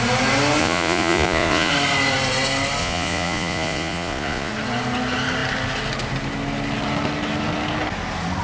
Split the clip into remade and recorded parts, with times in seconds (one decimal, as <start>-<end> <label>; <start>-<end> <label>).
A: 0.0-0.6 recorded; 0.6-1.7 remade; 1.7-2.8 recorded; 2.8-4.5 remade; 4.5-8.4 recorded